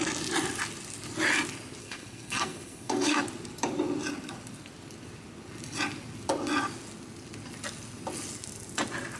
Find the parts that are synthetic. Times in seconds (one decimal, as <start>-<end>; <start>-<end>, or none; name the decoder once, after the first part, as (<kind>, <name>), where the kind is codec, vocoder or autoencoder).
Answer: 1.8-3.2 (codec, SNAC)